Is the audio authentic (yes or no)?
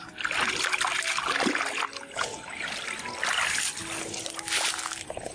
yes